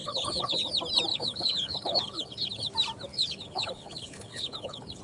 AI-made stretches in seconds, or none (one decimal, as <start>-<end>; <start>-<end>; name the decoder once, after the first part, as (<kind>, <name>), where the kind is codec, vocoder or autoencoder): 0.0-0.7 (codec, HILCodec); 1.1-2.7; 3.1-5.0